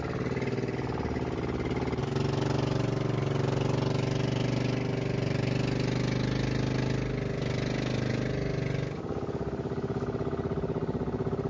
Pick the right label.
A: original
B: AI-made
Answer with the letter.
A